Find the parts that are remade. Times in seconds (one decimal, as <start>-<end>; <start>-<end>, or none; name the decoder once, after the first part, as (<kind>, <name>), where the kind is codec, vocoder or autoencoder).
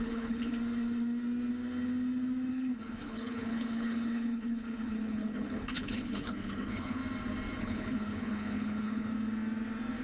0.0-0.5 (codec, HILCodec); 2.5-7.0; 7.6-9.1